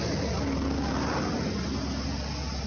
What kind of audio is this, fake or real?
real